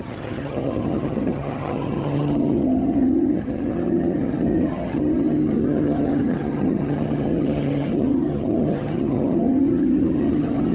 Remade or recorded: remade